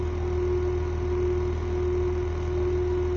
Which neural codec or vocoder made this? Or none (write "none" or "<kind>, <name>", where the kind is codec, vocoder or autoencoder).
none